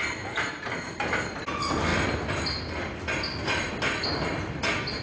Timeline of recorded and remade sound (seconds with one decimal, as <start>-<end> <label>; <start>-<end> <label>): 0.0-5.0 recorded